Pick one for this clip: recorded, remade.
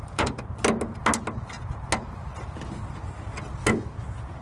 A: recorded